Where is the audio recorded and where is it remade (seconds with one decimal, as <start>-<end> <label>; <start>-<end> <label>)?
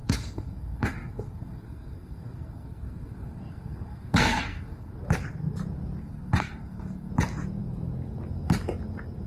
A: 0.0-4.9 remade; 4.9-6.0 recorded; 6.0-7.1 remade; 7.1-9.3 recorded